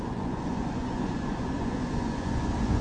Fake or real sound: fake